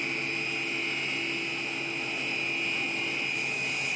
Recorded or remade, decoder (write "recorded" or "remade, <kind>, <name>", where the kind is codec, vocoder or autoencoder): recorded